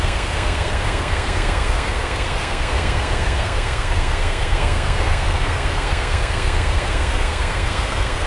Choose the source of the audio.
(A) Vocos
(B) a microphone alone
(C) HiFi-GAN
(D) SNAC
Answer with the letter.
D